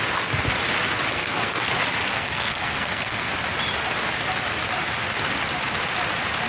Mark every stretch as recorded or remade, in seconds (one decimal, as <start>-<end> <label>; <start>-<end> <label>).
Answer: 0.0-1.1 recorded; 1.1-1.7 remade; 1.7-2.1 recorded; 2.1-3.3 remade; 3.3-6.5 recorded